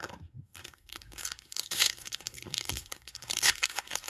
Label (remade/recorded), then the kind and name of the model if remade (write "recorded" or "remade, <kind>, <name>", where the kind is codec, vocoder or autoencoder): remade, codec, SNAC